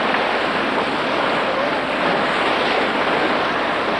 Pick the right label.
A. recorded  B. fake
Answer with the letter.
A